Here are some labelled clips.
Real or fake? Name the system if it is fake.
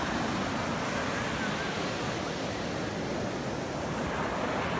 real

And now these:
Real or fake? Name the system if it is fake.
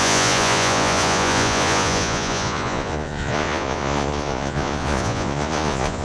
fake, vocoder, Vocos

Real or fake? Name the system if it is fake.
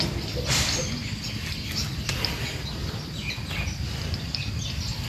real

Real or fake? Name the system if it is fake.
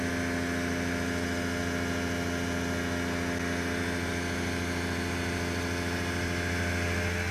real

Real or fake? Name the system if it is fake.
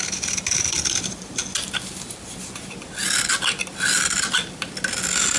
real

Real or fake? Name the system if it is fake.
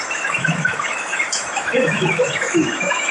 fake, autoencoder, DAC-VAE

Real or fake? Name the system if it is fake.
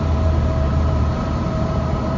fake, vocoder, BigVGAN v2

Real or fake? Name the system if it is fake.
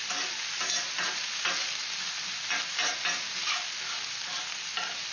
real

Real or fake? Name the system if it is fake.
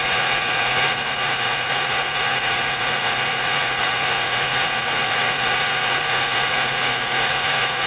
fake, vocoder, Vocos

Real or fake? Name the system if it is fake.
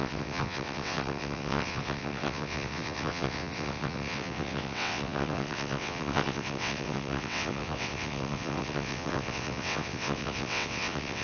fake, vocoder, WaveNeXt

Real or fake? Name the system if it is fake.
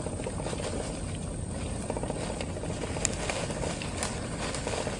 real